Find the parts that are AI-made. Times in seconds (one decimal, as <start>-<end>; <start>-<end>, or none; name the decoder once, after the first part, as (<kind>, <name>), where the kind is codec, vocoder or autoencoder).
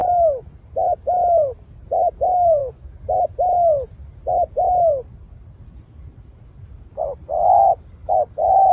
none